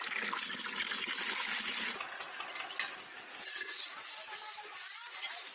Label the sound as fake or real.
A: real